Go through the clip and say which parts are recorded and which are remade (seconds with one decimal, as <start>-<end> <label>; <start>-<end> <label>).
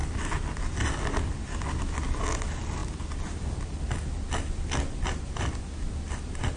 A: 0.0-6.6 recorded